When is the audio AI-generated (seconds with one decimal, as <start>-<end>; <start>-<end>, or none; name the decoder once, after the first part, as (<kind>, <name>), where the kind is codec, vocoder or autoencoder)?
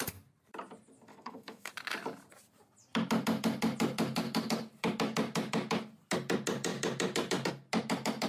1.1-1.7 (codec, SNAC)